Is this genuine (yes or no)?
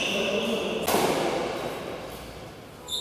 yes